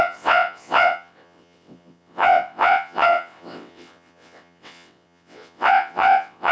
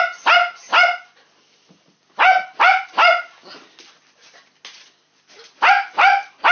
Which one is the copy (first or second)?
first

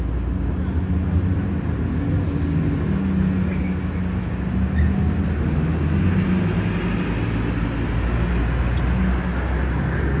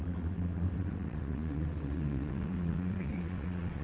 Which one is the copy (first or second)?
second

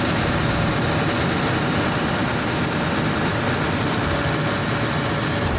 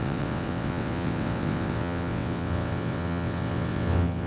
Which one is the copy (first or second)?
second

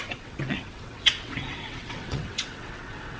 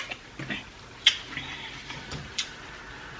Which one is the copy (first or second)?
first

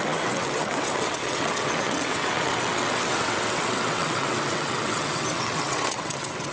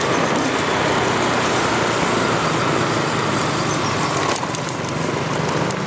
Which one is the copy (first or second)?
first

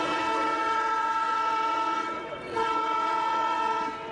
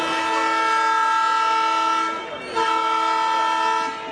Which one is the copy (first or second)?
first